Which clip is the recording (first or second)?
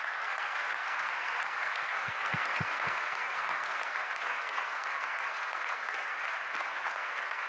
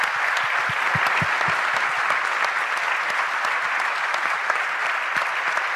second